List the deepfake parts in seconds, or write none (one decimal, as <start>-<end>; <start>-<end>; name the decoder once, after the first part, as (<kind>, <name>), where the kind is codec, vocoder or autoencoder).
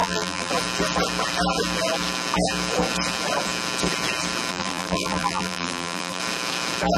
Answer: 0.0-0.5 (vocoder, BigVGAN v2); 4.5-6.2